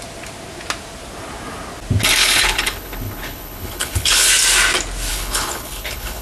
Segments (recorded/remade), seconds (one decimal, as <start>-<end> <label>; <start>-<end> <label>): 0.0-2.2 recorded; 2.2-4.3 remade; 4.3-5.1 recorded; 5.1-6.2 remade